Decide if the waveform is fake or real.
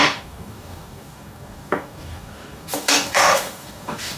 fake